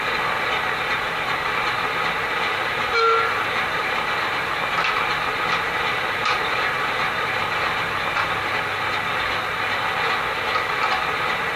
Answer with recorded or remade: recorded